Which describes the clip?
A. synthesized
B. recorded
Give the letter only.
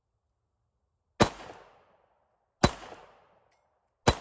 B